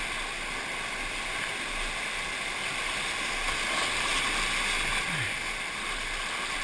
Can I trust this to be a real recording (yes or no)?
yes